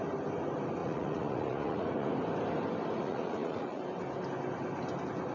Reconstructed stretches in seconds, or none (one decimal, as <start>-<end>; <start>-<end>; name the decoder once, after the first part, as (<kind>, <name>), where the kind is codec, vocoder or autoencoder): 0.8-2.1 (vocoder, Vocos); 3.0-3.8